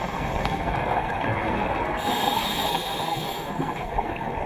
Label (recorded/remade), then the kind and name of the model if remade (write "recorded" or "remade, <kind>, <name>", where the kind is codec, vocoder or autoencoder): remade, codec, SNAC